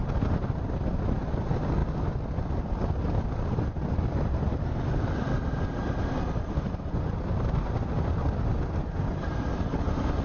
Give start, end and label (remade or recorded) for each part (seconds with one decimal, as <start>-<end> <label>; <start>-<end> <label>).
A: 0.0-10.2 recorded